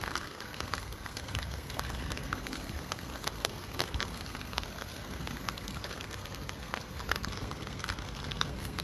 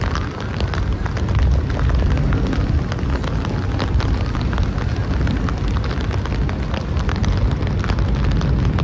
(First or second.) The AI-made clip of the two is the first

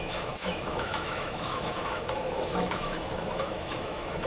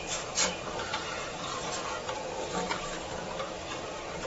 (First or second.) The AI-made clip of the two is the first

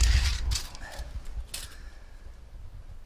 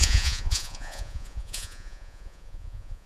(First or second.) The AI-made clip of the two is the second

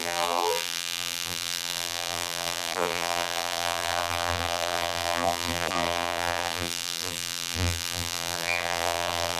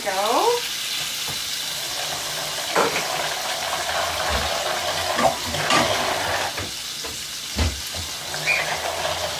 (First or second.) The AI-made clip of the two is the first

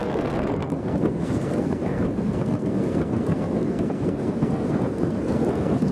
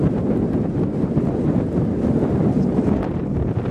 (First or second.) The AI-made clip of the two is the first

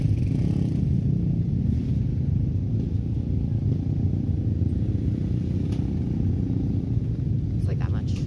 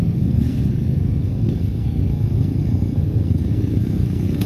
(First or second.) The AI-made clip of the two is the second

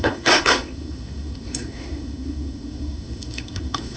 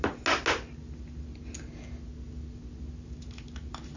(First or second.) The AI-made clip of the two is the first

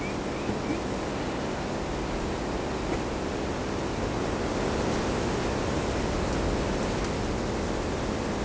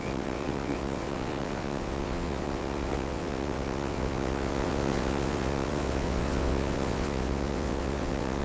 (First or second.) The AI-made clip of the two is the second